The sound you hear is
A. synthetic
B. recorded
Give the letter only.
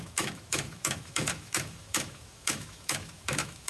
A